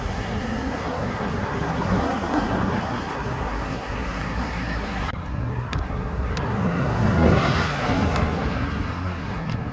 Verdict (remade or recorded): remade